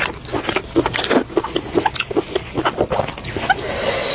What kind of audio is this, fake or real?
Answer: real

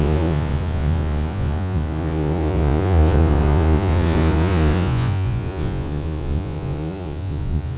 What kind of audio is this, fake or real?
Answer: fake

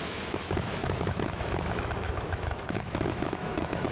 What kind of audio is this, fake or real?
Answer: fake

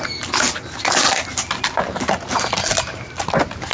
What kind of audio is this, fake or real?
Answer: real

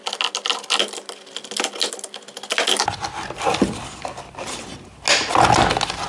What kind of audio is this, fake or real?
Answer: real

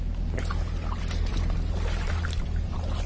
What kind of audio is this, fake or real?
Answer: real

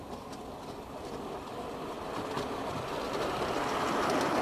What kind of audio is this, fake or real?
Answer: real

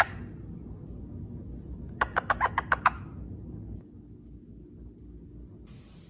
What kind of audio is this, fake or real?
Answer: real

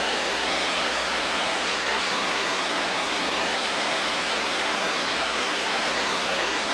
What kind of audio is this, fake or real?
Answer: fake